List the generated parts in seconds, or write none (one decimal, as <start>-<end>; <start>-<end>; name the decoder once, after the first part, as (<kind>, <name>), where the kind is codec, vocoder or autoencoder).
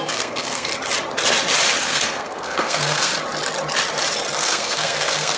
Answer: 0.0-0.7 (codec, SNAC); 1.8-3.1; 4.4-5.4